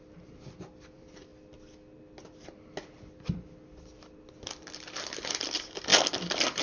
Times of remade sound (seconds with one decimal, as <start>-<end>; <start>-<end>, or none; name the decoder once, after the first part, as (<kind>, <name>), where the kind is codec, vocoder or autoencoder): 0.0-1.3 (vocoder, BigVGAN v2); 5.3-5.9